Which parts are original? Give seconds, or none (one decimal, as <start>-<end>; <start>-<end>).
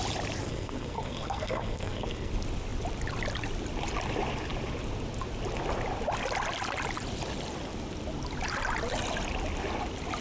0.0-0.5; 2.3-10.2